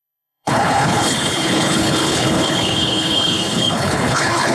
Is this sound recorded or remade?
remade